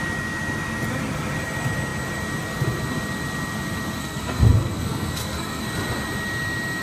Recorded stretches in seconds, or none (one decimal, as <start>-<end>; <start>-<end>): 0.0-4.0; 5.6-6.8